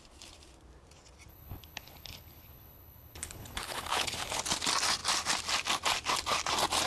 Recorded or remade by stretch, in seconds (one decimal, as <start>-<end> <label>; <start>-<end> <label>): 0.0-1.3 recorded; 1.3-4.4 remade; 4.4-6.9 recorded